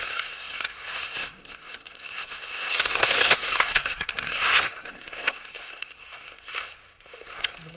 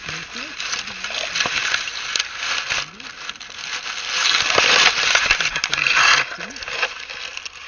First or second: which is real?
second